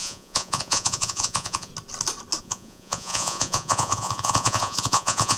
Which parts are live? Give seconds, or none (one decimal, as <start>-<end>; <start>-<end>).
1.7-2.4